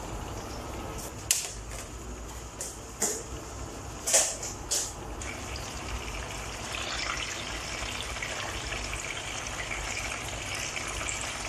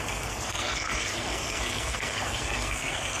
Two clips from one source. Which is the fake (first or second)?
second